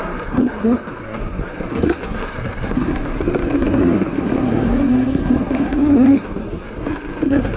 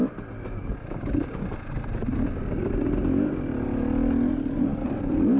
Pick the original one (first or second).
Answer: second